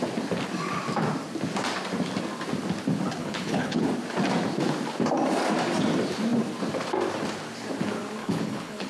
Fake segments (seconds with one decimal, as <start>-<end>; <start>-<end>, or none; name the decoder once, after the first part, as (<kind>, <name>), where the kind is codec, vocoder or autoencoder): 3.2-3.9 (codec, HILCodec); 8.2-8.9